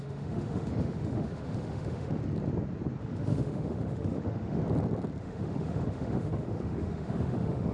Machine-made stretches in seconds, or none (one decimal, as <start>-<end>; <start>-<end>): 0.0-2.2; 3.0-4.6; 5.2-7.7